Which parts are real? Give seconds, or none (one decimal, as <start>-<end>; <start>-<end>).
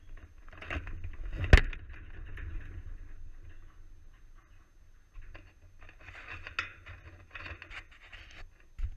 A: 0.0-9.0